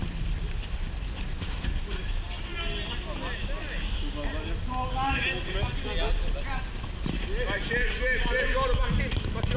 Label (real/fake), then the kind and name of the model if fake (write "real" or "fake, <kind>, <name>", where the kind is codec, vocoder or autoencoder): real